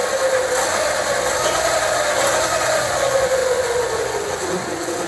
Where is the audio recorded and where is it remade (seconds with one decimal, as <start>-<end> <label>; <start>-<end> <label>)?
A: 0.0-2.4 recorded; 2.4-5.1 remade